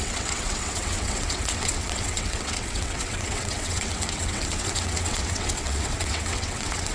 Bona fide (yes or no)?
no